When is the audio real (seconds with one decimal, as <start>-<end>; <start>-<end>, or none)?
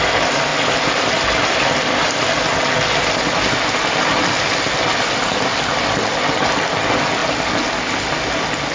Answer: 0.0-8.7